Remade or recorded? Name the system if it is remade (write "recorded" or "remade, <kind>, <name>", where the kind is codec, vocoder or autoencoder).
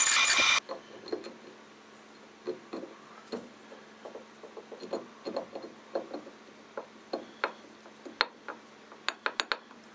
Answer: recorded